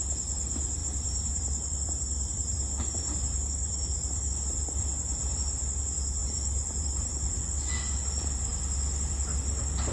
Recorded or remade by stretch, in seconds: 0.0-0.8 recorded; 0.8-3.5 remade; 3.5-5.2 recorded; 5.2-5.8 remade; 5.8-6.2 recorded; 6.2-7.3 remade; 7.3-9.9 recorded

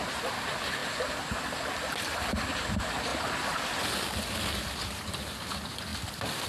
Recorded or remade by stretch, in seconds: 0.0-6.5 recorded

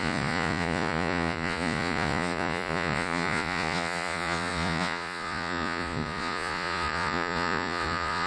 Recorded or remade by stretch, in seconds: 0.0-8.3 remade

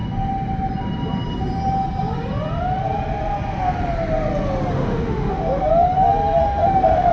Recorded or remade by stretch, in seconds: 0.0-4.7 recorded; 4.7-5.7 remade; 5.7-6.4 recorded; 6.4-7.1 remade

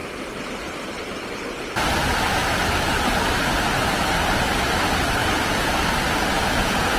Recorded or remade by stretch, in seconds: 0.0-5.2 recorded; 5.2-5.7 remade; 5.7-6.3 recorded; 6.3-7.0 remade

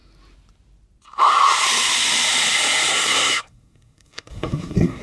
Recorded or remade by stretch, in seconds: 0.0-2.9 recorded; 2.9-5.0 remade